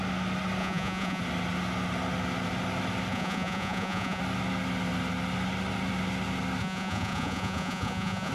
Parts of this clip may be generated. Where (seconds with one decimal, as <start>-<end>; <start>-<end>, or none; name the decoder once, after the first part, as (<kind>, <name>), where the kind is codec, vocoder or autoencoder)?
0.6-1.2 (vocoder, Vocos); 3.1-4.2; 6.6-8.3